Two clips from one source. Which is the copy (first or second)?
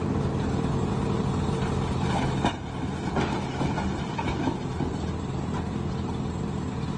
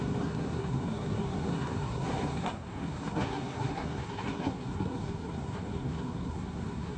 second